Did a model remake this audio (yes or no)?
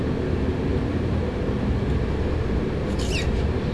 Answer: no